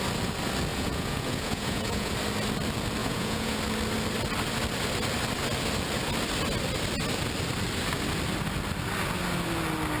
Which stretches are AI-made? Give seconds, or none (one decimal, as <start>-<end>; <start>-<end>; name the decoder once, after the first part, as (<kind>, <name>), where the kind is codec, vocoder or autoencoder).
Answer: 0.7-2.1 (vocoder, Vocos); 3.0-3.6